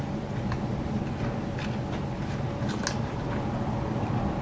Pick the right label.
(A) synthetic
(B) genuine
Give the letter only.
B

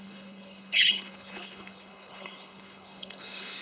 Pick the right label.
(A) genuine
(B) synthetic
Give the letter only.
B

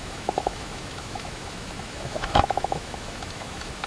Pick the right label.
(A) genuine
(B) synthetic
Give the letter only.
B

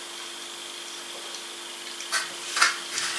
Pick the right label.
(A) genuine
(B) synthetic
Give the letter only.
A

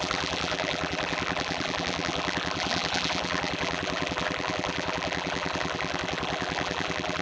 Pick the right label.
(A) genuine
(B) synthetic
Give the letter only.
B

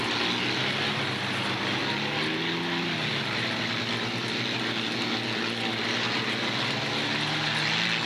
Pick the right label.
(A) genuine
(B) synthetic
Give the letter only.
A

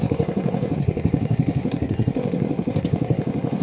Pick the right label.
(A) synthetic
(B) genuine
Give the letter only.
A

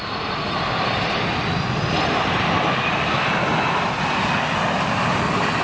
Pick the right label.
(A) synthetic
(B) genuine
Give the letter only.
B